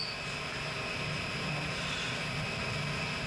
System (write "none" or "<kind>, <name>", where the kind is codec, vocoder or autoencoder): none